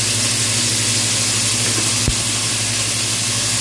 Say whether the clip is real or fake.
real